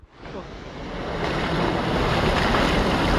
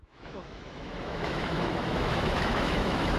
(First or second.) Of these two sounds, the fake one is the second